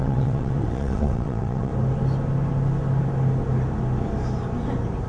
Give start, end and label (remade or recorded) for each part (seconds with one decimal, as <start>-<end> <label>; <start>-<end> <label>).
0.0-1.7 remade; 1.7-5.1 recorded